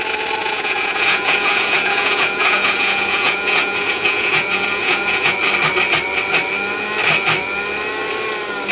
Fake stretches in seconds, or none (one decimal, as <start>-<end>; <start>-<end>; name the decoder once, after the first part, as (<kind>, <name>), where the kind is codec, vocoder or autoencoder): 0.4-5.3 (vocoder, Vocos)